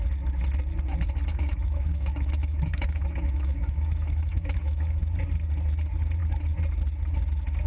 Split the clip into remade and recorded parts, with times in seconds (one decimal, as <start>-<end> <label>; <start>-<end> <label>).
0.0-1.3 recorded; 1.3-5.0 remade; 5.0-7.7 recorded